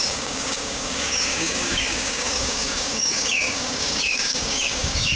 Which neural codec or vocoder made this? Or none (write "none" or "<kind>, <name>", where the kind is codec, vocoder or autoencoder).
codec, DAC